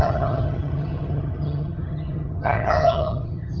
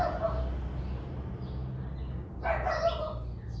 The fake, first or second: first